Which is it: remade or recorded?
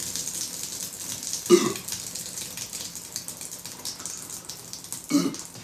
recorded